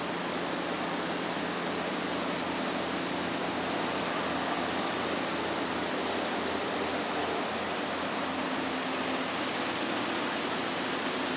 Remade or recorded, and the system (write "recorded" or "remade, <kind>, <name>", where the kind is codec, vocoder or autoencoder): recorded